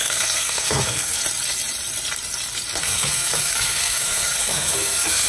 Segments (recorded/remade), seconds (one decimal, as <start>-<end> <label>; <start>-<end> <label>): 0.0-1.2 remade; 1.2-2.8 recorded; 2.8-5.3 remade